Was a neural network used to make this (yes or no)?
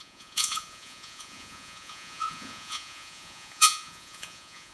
yes